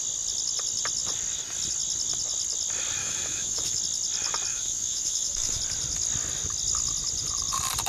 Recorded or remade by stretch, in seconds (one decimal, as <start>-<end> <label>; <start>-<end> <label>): 0.0-3.0 recorded; 3.0-3.8 remade; 3.8-4.5 recorded; 4.5-5.6 remade; 5.6-7.9 recorded